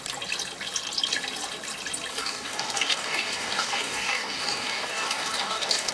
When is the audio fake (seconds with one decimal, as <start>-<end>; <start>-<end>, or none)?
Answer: 2.1-5.9